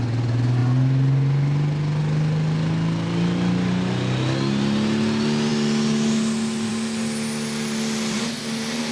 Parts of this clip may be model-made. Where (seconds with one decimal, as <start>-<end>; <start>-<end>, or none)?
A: none